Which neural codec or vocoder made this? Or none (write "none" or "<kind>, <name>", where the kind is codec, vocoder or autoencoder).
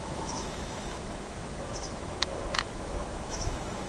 autoencoder, DAC-VAE